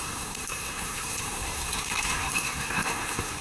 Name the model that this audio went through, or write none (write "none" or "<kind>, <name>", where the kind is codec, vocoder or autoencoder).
codec, SNAC